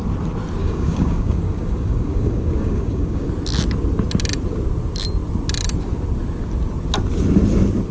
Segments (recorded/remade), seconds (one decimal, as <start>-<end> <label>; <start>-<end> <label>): 0.0-0.6 recorded; 0.6-3.3 remade; 3.3-7.9 recorded